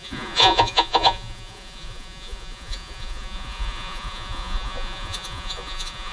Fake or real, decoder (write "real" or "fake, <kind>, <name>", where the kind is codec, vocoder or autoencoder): fake, vocoder, Vocos